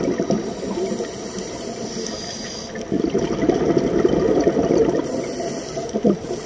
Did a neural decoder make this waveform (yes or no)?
no